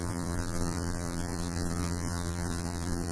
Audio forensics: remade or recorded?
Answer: remade